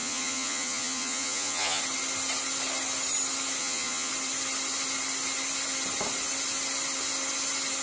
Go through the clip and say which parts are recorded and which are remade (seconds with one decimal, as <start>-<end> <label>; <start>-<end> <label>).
0.0-1.8 remade; 1.8-3.6 recorded; 3.6-4.1 remade; 4.1-7.8 recorded